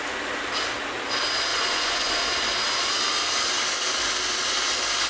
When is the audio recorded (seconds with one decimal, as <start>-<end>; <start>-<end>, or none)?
0.0-1.5; 2.2-5.1